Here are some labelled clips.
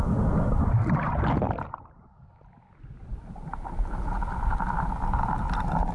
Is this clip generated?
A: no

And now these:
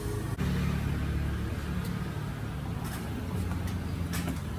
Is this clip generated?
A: no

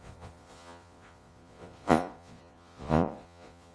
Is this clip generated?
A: yes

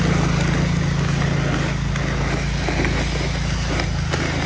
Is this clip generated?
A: no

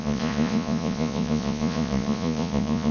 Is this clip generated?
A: yes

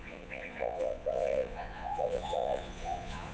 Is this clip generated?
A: yes